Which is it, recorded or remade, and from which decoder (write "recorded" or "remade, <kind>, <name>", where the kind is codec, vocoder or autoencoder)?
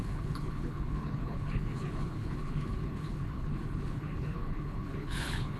remade, codec, HILCodec